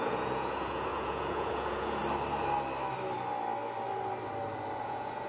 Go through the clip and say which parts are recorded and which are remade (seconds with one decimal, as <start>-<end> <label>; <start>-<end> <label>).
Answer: 0.0-2.0 remade; 2.0-4.8 recorded; 4.8-5.3 remade